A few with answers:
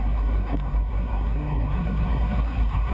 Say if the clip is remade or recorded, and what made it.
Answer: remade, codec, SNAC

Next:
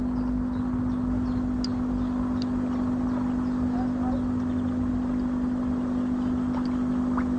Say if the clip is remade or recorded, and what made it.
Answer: recorded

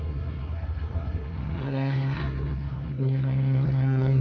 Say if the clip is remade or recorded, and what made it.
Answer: remade, codec, SNAC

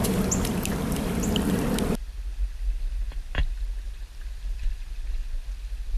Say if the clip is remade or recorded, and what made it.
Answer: recorded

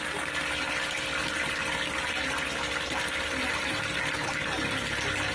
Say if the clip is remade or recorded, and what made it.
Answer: recorded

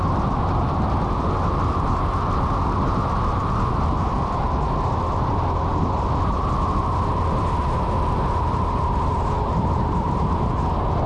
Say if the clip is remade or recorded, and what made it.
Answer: recorded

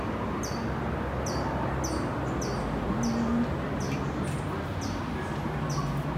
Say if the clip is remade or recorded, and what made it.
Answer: recorded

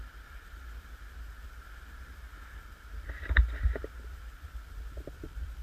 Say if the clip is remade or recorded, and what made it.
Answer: recorded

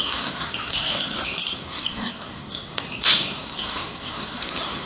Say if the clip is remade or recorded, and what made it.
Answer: remade, codec, SNAC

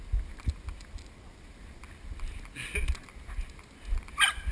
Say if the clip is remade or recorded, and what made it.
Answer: recorded